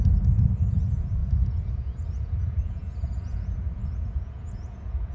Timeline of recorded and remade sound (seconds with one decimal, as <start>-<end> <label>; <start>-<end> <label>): 0.0-5.1 remade